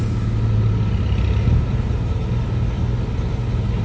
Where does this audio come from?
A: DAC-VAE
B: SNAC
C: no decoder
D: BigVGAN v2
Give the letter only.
C